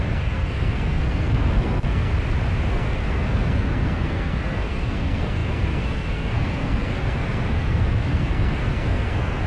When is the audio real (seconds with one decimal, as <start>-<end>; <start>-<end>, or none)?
2.1-2.7

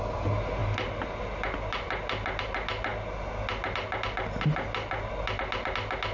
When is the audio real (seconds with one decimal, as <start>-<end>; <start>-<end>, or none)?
0.0-6.1

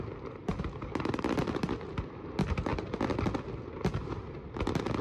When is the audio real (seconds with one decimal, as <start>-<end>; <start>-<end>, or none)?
0.0-5.0

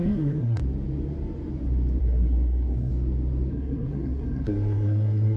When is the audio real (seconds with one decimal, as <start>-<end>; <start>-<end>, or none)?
0.6-2.0; 2.9-3.5

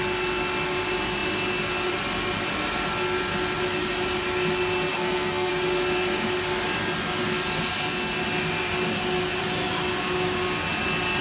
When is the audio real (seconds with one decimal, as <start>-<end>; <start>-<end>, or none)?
0.0-4.9; 5.5-11.2